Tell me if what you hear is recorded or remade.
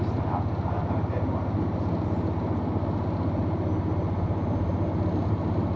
recorded